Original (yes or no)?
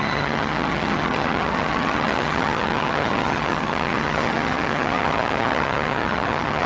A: no